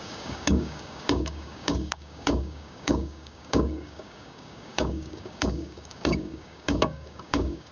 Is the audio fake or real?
fake